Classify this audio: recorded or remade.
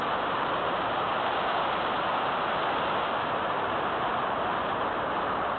remade